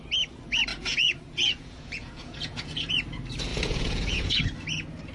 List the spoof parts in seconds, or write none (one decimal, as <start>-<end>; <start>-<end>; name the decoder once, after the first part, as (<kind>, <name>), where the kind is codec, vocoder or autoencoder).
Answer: 0.7-2.9 (vocoder, Vocos); 3.5-4.4